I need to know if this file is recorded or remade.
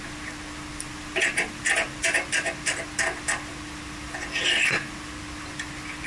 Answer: recorded